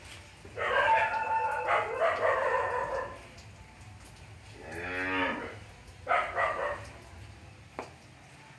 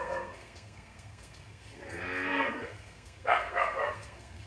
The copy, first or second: second